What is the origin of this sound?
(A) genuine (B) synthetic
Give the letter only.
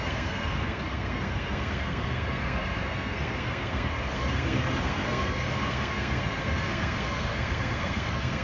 B